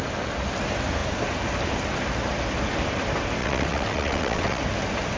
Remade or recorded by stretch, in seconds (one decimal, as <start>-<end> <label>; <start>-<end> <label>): 0.0-3.4 recorded; 3.4-4.6 remade; 4.6-5.2 recorded